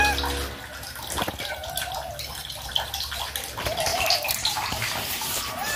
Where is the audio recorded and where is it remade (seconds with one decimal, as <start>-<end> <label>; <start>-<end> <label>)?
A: 0.0-3.9 recorded; 3.9-5.8 remade